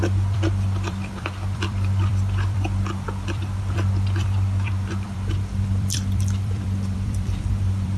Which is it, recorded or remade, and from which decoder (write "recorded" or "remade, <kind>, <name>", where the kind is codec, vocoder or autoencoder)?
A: remade, vocoder, BigVGAN v2